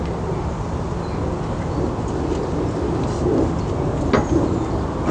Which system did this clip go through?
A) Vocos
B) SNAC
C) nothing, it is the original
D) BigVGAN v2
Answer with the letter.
C